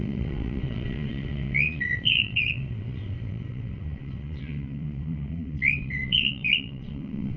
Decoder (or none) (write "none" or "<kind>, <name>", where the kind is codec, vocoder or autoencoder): vocoder, WaveNeXt